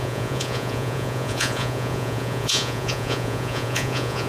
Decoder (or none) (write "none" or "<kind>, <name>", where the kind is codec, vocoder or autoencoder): vocoder, Vocos